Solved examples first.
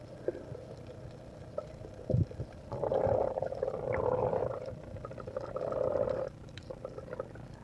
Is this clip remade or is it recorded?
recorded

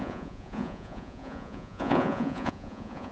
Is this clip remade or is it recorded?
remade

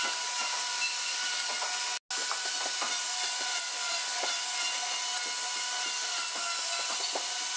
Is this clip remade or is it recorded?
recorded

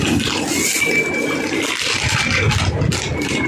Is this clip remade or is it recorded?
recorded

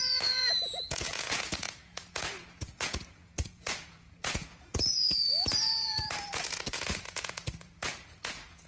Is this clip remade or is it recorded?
remade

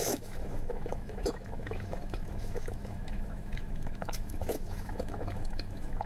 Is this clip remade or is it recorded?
remade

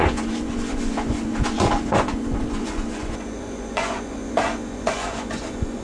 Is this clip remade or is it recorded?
remade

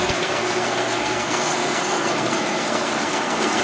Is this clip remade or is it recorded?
remade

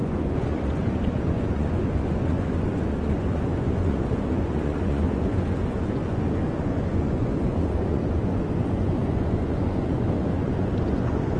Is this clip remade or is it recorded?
remade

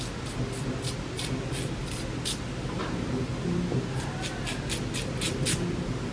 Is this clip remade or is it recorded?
recorded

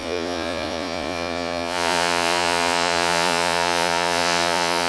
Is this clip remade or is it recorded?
remade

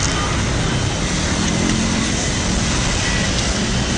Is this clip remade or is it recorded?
recorded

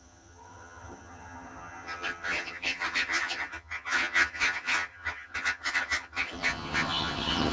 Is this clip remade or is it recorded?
remade